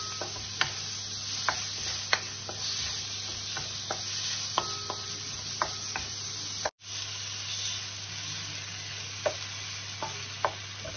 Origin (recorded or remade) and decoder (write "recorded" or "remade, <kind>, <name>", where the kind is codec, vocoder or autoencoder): recorded